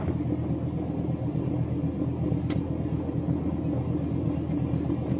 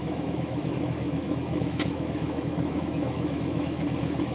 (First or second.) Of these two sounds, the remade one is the second